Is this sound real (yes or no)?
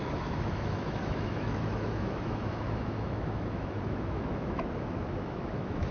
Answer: no